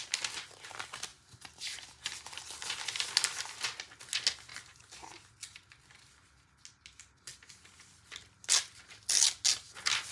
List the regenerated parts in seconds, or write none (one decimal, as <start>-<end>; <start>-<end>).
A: 1.1-2.4; 4.5-5.3